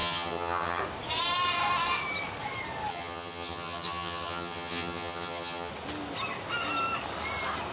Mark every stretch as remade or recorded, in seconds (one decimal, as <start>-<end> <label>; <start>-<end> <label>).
0.0-0.8 remade; 0.8-2.9 recorded; 2.9-5.7 remade; 5.7-7.7 recorded